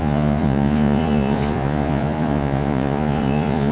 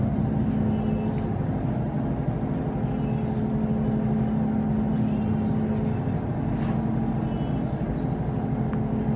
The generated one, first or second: first